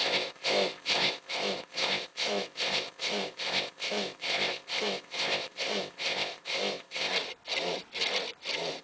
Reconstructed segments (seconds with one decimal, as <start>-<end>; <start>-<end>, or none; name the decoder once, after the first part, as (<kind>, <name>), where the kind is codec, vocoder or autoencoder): 0.0-7.1 (codec, ZipCodec)